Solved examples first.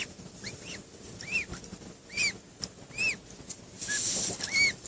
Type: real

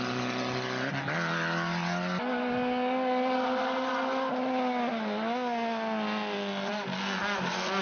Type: real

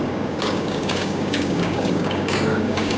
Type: fake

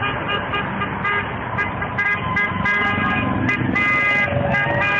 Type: real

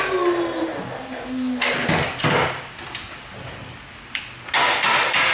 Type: real